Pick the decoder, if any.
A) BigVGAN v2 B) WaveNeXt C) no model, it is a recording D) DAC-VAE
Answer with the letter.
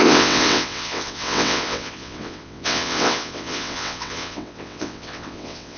B